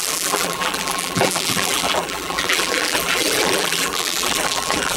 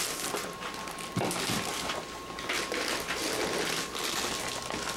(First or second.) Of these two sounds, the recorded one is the second